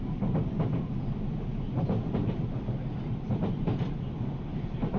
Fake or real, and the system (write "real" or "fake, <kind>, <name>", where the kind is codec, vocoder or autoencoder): real